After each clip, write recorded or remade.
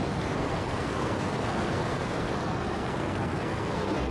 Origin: remade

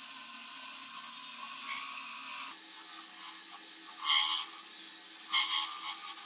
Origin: recorded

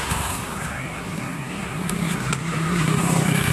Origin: remade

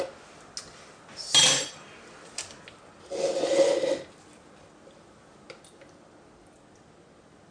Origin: recorded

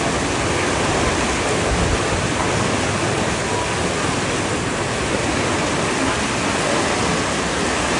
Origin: recorded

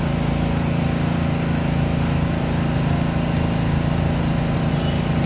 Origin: recorded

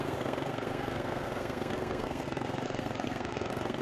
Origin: remade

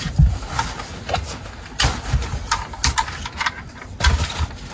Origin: recorded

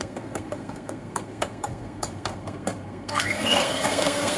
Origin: remade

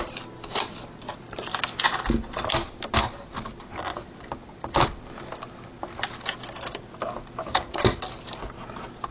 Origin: recorded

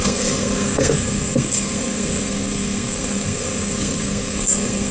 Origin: remade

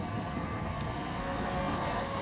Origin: remade